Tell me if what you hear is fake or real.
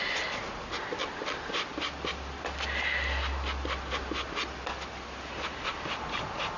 real